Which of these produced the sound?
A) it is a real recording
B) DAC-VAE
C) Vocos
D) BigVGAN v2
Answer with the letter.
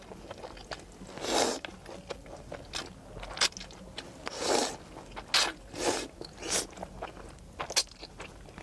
A